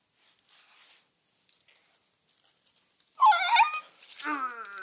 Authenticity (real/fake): real